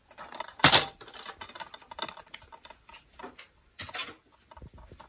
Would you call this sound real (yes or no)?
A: yes